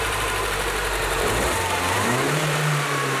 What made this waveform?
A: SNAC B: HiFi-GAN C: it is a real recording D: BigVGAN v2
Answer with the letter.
D